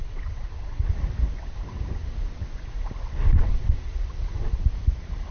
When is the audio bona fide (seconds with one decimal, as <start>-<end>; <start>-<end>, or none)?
0.9-3.0; 4.5-5.3